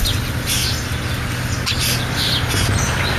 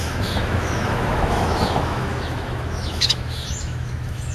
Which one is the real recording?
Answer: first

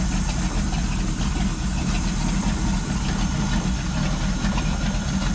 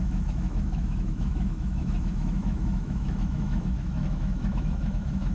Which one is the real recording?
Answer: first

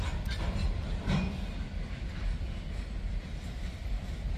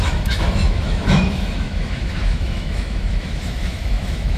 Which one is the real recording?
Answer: first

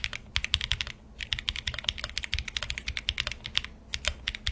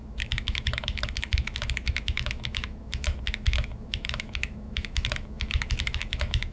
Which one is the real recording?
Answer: first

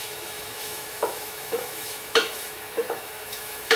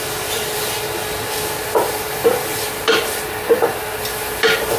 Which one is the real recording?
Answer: second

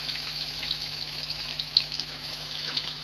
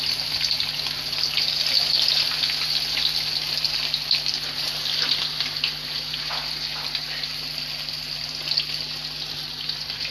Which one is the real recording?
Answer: second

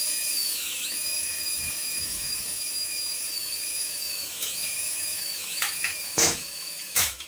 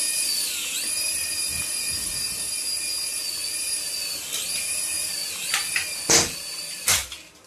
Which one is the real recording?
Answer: second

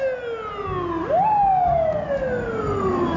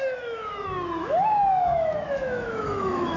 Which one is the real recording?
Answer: first